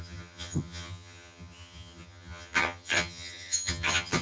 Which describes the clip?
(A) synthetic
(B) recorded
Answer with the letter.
A